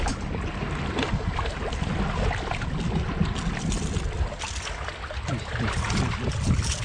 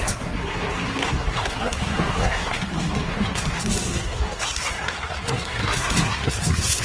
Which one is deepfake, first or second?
second